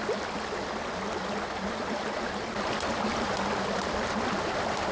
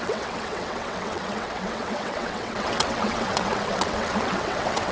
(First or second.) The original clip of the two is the first